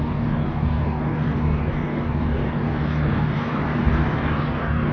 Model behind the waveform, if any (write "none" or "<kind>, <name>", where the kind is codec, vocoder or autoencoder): codec, DAC